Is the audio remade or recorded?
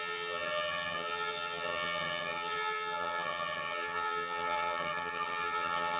remade